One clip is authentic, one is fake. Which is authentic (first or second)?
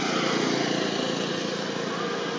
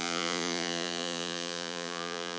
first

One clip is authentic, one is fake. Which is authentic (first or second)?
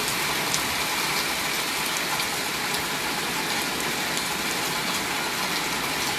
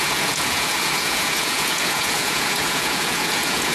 first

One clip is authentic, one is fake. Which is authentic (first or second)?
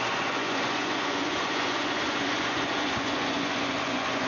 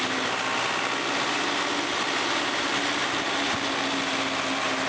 second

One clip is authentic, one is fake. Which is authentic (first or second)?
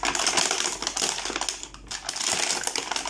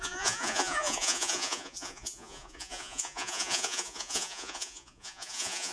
first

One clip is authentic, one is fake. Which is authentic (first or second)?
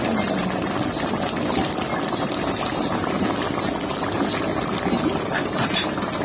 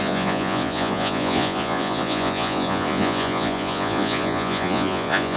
first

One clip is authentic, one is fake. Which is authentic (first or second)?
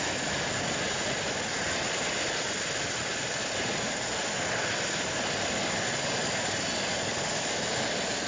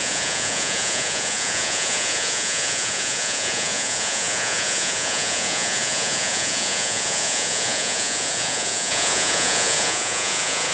first